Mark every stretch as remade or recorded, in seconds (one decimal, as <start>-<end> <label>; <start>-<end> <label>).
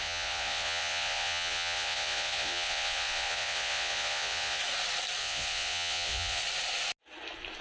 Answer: 0.0-4.6 remade; 4.6-5.2 recorded; 5.2-6.4 remade; 6.4-7.6 recorded